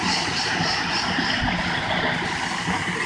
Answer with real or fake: real